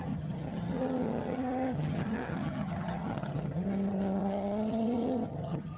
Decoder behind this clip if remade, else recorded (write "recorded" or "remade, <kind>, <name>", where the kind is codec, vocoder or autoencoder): remade, vocoder, HiFi-GAN